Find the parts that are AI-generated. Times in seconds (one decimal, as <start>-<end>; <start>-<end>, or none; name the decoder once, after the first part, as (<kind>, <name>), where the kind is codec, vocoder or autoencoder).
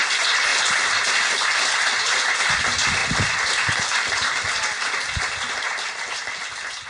none